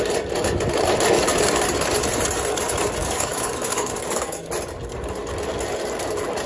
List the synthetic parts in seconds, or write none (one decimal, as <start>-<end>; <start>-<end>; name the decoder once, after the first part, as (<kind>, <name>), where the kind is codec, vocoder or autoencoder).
3.0-4.5 (codec, DAC)